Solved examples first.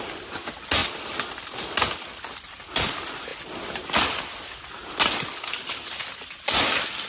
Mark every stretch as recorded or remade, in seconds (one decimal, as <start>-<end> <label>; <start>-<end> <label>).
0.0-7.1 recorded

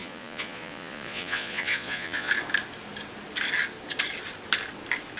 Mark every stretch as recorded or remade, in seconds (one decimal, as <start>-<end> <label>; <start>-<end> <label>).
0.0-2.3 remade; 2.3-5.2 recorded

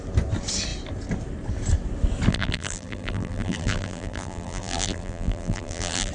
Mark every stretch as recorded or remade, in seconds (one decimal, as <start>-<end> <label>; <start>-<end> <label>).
0.0-2.3 recorded; 2.3-6.1 remade

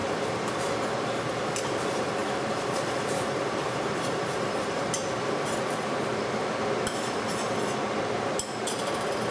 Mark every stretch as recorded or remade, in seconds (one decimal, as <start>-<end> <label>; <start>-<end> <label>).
0.0-1.6 recorded; 1.6-5.0 remade; 5.0-8.1 recorded; 8.1-9.3 remade

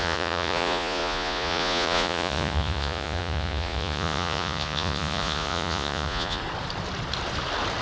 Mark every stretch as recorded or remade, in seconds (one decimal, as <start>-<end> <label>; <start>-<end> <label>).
0.0-6.4 remade; 6.4-7.8 recorded